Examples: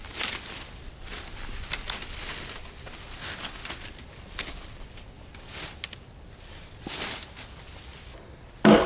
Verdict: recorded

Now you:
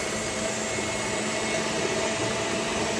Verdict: recorded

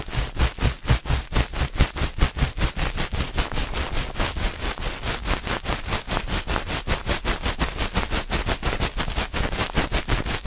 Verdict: recorded